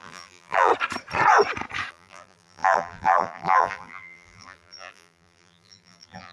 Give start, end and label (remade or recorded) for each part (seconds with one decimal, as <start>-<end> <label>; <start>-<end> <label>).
0.0-0.7 remade; 0.7-1.9 recorded; 1.9-6.3 remade